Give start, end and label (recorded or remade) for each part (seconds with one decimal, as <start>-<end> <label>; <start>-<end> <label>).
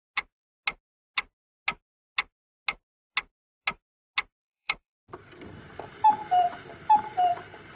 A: 0.0-4.4 recorded; 4.4-5.7 remade; 5.7-7.8 recorded